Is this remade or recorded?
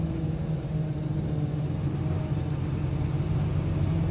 recorded